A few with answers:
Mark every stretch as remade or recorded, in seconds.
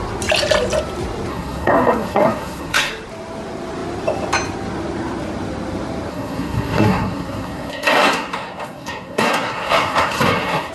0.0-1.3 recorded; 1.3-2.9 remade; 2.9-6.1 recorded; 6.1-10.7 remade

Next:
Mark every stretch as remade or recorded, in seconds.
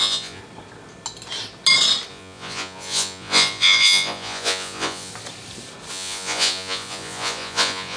0.0-0.4 remade; 0.4-2.1 recorded; 2.1-5.1 remade; 5.1-5.9 recorded; 5.9-8.0 remade